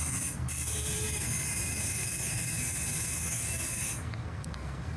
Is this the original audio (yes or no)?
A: no